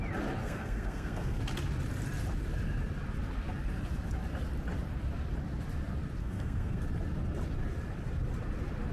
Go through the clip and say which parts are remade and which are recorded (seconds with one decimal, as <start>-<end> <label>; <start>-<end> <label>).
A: 0.0-0.4 recorded; 0.4-1.4 remade; 1.4-6.2 recorded; 6.2-6.8 remade; 6.8-8.9 recorded